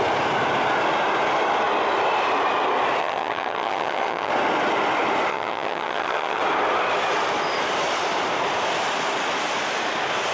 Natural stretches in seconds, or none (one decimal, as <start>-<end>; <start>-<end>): 0.0-3.0; 4.3-5.3; 6.4-10.3